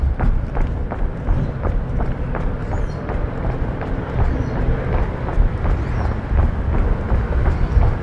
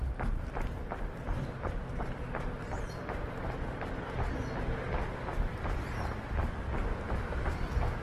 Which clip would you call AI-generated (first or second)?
first